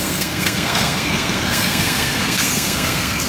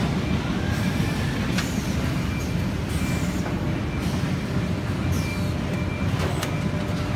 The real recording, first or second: second